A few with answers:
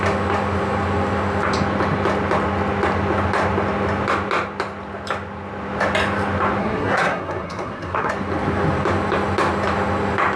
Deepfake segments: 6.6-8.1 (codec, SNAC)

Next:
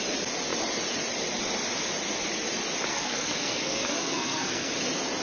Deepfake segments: 2.9-4.7 (codec, SNAC)